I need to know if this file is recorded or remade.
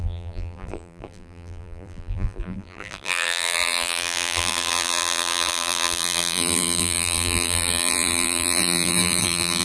remade